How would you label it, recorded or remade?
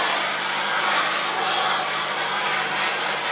recorded